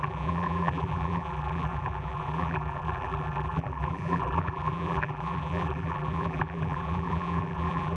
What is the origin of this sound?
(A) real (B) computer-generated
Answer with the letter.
B